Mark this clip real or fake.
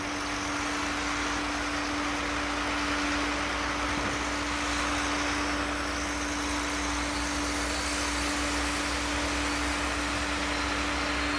real